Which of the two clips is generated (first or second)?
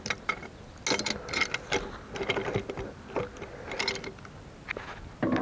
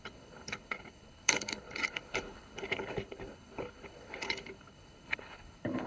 second